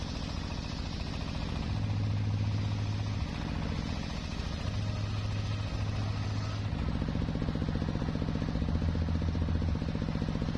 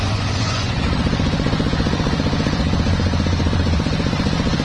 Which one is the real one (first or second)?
first